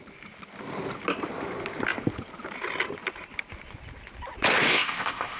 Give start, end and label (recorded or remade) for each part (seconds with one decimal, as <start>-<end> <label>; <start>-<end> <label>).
0.0-4.7 recorded; 4.7-5.4 remade